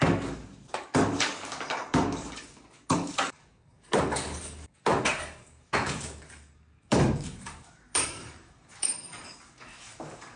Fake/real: fake